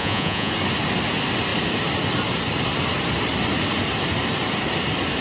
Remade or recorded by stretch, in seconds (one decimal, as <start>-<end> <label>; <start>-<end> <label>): 0.0-0.5 remade; 0.5-5.2 recorded